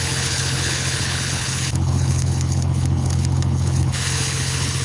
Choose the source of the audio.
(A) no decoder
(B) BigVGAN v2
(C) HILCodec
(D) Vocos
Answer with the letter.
C